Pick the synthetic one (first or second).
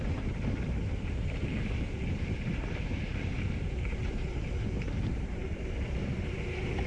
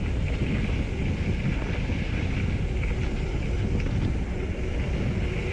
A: first